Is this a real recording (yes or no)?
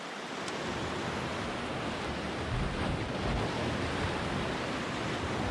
yes